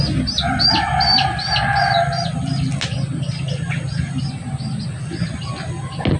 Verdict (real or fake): real